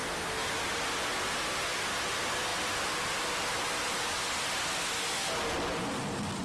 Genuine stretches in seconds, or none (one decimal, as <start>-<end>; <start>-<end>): 0.0-6.4